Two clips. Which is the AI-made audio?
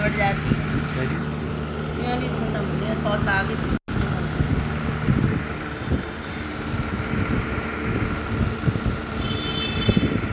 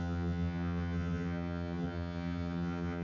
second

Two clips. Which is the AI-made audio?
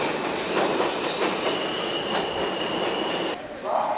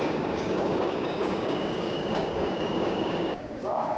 second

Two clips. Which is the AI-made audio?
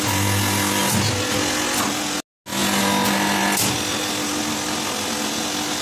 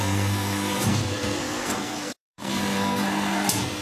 second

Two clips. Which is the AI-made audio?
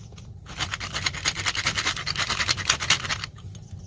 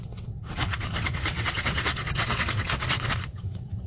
second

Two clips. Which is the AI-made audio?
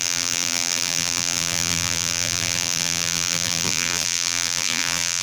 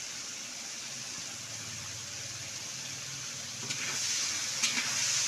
first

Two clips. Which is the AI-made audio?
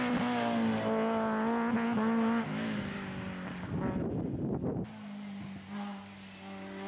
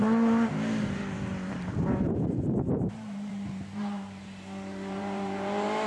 second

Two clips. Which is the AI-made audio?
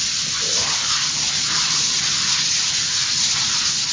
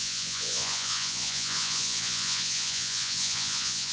second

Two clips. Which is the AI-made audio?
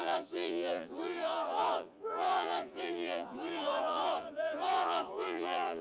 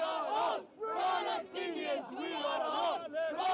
first